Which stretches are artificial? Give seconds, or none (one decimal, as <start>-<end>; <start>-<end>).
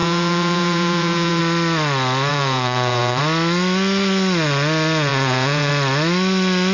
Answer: 0.0-1.4; 2.3-3.2; 5.1-5.7